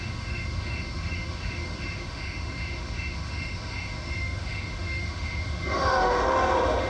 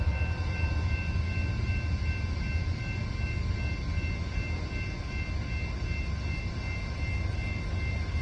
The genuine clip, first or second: second